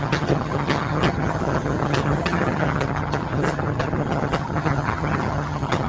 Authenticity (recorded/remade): remade